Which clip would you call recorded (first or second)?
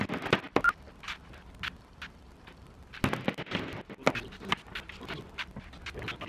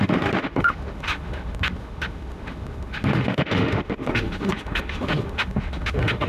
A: first